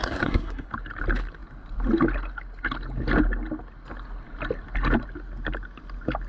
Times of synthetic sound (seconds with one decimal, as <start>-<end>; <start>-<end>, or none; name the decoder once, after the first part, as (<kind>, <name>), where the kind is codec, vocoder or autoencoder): 0.0-0.7 (codec, SNAC)